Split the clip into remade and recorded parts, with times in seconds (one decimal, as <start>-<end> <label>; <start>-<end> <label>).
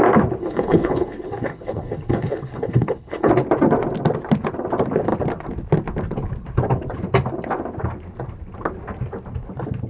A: 0.0-0.4 recorded; 0.4-3.3 remade; 3.3-9.9 recorded